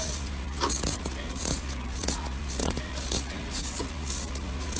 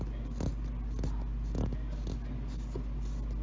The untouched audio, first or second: second